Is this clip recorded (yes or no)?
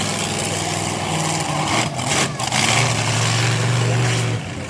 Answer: yes